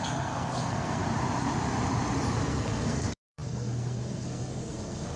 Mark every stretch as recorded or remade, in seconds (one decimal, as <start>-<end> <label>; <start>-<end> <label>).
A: 0.0-1.0 remade; 1.0-2.5 recorded; 2.5-5.2 remade